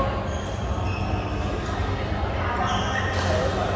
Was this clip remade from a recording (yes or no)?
no